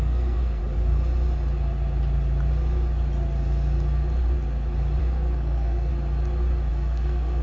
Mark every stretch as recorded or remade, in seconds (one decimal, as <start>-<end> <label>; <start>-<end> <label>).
0.0-0.6 remade; 0.6-5.0 recorded; 5.0-5.9 remade; 5.9-6.7 recorded; 6.7-7.4 remade